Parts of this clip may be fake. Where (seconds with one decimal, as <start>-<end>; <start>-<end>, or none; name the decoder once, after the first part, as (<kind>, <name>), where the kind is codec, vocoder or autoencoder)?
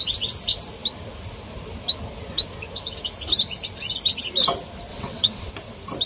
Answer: 4.9-5.5 (vocoder, WaveNeXt)